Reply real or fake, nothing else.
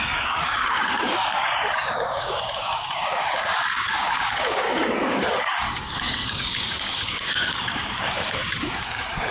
fake